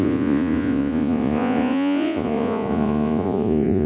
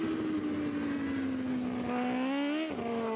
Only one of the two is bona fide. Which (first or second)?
second